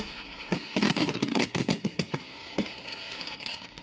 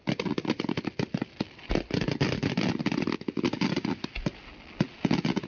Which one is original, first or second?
second